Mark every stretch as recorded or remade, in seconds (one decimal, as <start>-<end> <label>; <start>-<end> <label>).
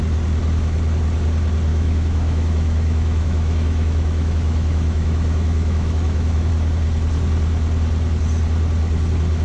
0.0-1.7 recorded; 1.7-6.5 remade; 6.5-9.4 recorded